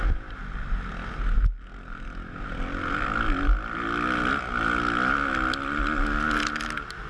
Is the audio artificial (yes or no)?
no